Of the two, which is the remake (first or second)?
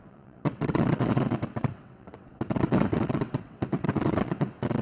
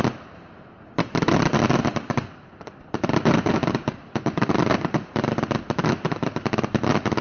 first